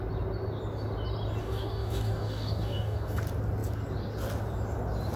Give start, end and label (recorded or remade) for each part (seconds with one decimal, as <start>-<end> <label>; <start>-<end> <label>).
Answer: 0.0-1.4 recorded; 1.4-3.2 remade; 3.2-5.2 recorded